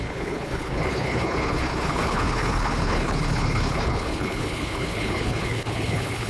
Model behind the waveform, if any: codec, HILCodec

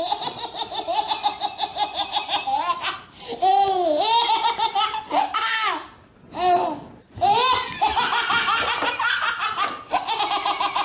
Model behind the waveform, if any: none